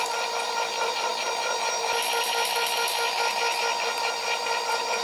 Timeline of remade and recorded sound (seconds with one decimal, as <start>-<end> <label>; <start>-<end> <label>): 0.0-5.0 recorded

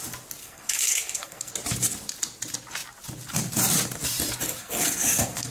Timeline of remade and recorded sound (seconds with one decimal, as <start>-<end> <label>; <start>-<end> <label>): 0.0-0.4 recorded; 0.4-1.5 remade; 1.5-4.6 recorded; 4.6-5.5 remade

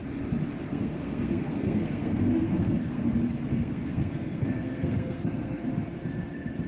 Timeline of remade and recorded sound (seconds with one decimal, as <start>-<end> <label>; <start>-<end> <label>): 0.0-0.7 recorded; 0.7-3.0 remade; 3.0-3.5 recorded; 3.5-5.6 remade; 5.6-6.7 recorded

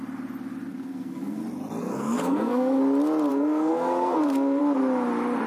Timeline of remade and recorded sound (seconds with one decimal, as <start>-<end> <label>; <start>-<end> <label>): 0.0-0.7 recorded; 0.7-1.4 remade; 1.4-1.8 recorded; 1.8-2.8 remade; 2.8-3.3 recorded; 3.3-4.6 remade; 4.6-5.5 recorded

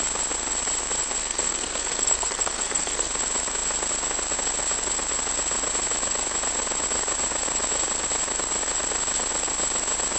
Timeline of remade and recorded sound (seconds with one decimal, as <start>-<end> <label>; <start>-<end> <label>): 0.0-1.2 recorded; 1.2-3.1 remade; 3.1-10.2 recorded

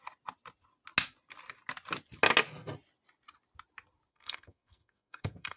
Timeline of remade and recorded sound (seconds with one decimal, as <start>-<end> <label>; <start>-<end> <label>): 0.0-4.1 recorded; 4.1-5.6 remade

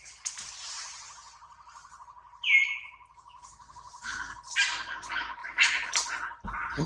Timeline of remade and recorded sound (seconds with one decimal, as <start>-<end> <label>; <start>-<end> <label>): 0.0-6.9 recorded

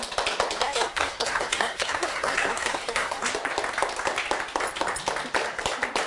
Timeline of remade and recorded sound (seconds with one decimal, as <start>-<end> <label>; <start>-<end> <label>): 0.0-0.6 recorded; 0.6-3.3 remade; 3.3-6.1 recorded